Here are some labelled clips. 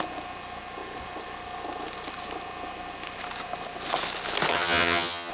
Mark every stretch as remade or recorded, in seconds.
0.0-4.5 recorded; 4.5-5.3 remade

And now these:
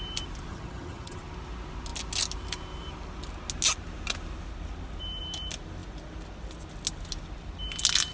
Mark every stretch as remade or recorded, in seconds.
0.0-0.5 recorded; 0.5-1.2 remade; 1.2-8.1 recorded

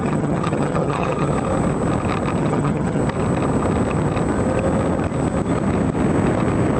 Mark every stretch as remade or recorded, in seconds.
0.0-1.3 remade; 1.3-2.4 recorded; 2.4-3.0 remade; 3.0-6.8 recorded

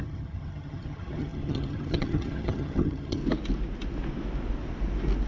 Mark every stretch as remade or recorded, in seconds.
0.0-3.2 remade; 3.2-5.3 recorded

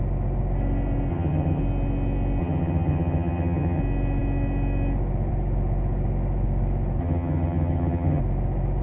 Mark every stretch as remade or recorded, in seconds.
0.0-1.1 recorded; 1.1-1.6 remade; 1.6-2.4 recorded; 2.4-3.8 remade; 3.8-7.0 recorded; 7.0-8.2 remade; 8.2-8.8 recorded

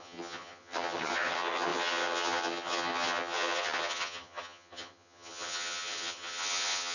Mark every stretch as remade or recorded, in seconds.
0.0-6.9 remade

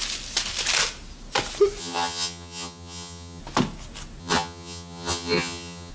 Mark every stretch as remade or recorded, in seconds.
0.0-1.8 recorded; 1.8-3.4 remade; 3.4-4.2 recorded; 4.2-5.9 remade